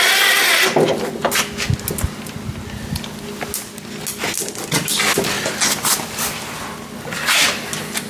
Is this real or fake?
real